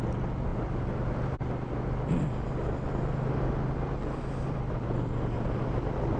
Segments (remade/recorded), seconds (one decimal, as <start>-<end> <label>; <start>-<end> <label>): 0.0-0.5 recorded; 0.5-1.5 remade; 1.5-6.2 recorded